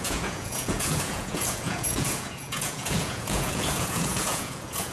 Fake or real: fake